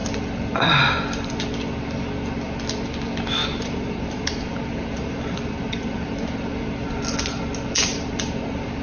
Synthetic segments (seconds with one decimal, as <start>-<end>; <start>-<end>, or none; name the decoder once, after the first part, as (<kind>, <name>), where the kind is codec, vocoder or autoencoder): 3.4-6.7 (vocoder, BigVGAN v2); 7.9-8.8